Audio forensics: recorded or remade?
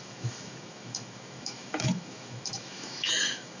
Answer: remade